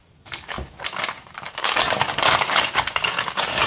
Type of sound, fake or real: fake